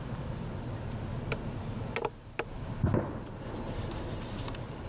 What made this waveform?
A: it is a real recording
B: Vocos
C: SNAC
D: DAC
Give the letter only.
A